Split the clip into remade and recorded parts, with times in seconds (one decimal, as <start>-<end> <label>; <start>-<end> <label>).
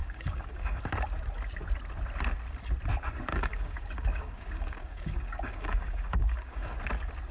0.0-0.8 remade; 0.8-3.3 recorded; 3.3-6.8 remade; 6.8-7.3 recorded